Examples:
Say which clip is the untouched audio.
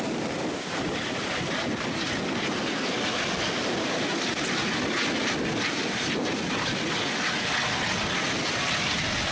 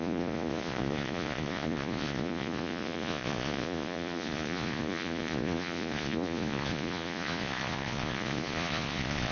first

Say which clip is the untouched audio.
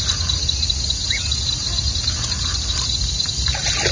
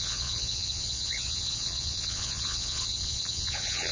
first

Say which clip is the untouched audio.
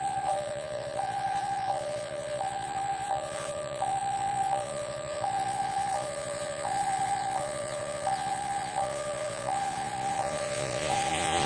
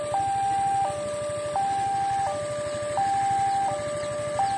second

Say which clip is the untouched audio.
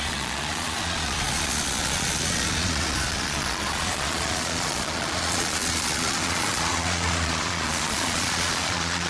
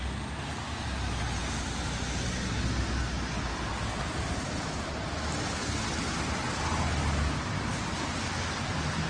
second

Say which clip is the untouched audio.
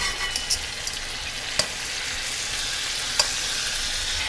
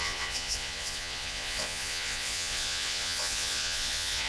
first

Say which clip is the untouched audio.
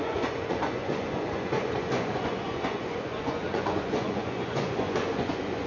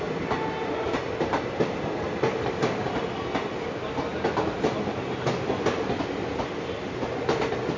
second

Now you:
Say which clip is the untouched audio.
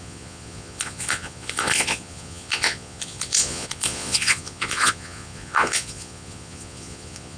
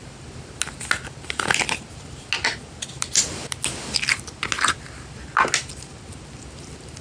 second